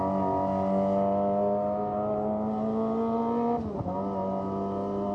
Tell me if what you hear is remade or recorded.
recorded